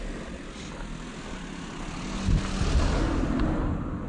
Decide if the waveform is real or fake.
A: real